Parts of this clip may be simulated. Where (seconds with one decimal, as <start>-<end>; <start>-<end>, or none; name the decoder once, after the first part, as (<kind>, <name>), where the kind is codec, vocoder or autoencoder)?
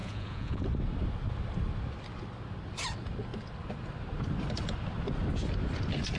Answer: 0.0-0.6 (vocoder, Vocos)